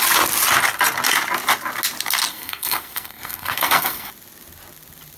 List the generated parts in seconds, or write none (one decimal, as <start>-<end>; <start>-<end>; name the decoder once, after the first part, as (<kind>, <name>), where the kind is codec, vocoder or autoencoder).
2.3-4.1 (codec, SNAC)